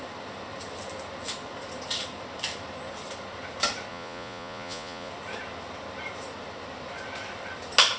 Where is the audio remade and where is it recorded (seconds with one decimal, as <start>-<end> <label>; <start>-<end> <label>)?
0.0-3.9 recorded; 3.9-5.1 remade; 5.1-8.0 recorded